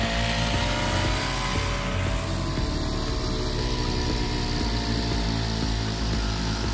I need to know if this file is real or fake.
real